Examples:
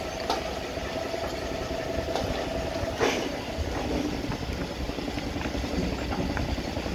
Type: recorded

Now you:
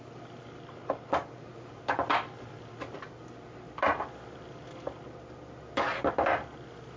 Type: recorded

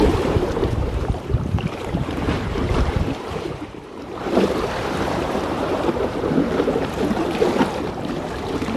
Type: remade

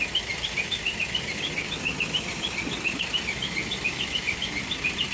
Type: recorded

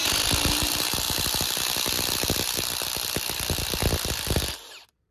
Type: remade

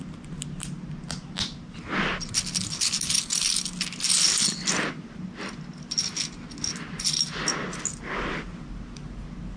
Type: recorded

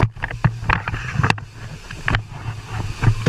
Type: recorded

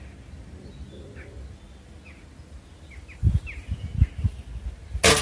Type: recorded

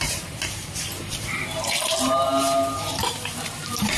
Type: remade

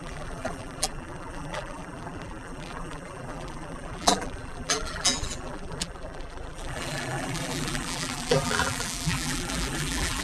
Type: remade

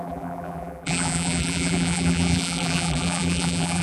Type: remade